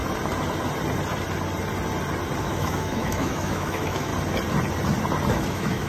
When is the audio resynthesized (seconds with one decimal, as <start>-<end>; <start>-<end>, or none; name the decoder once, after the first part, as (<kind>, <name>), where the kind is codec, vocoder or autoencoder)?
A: 2.4-4.1 (autoencoder, DAC-VAE); 5.3-5.9

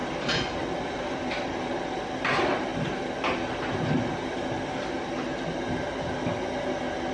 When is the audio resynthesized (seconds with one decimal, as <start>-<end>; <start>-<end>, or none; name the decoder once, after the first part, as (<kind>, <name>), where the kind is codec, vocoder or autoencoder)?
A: 0.5-2.7 (vocoder, BigVGAN v2)

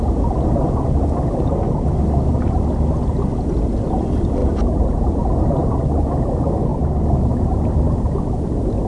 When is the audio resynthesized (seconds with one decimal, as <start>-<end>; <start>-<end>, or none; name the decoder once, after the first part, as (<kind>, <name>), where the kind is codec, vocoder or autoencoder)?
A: 4.4-5.2 (vocoder, BigVGAN v2); 6.7-8.2

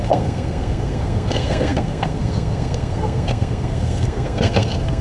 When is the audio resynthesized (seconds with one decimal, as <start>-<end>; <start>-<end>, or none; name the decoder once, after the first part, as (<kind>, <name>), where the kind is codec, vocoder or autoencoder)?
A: 0.0-5.0 (codec, SNAC)